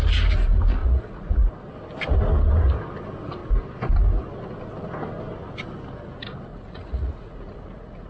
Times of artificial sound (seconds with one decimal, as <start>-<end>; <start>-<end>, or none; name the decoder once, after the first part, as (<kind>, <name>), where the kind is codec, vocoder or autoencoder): 0.8-1.5 (vocoder, Vocos); 6.5-8.1